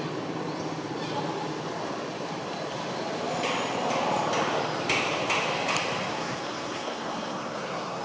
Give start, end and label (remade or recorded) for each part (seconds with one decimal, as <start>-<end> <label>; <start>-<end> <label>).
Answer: 0.0-6.1 recorded; 6.1-8.0 remade